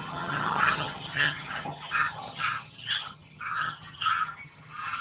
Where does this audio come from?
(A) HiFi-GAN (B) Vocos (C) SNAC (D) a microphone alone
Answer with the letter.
A